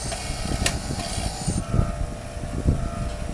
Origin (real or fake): real